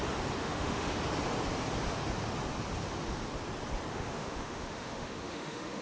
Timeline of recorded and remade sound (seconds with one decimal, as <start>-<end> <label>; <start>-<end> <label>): 0.0-0.4 recorded; 0.4-1.0 remade; 1.0-3.9 recorded; 3.9-5.8 remade